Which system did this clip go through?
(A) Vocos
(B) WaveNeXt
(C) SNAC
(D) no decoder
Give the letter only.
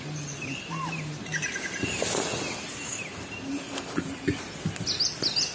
D